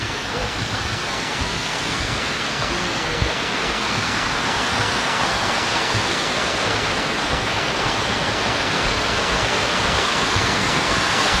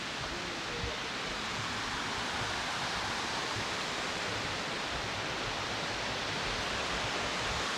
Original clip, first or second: second